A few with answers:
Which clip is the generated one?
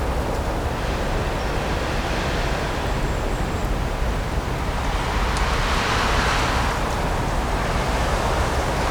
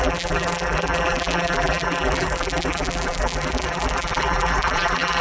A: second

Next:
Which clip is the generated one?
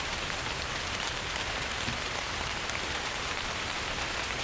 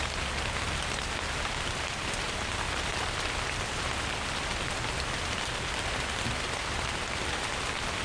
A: first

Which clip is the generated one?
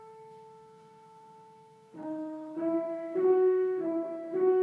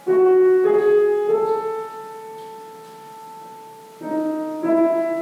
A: first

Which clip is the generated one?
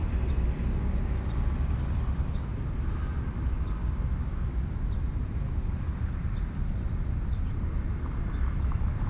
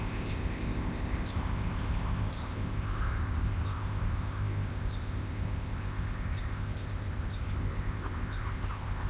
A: second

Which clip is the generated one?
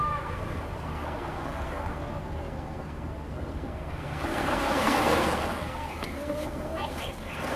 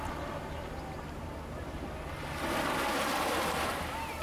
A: first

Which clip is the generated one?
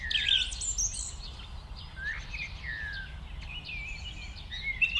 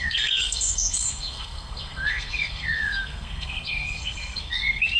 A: second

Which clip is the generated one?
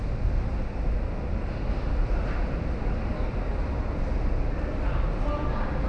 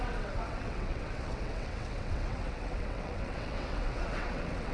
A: second